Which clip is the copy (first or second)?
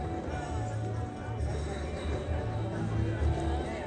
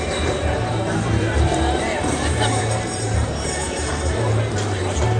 second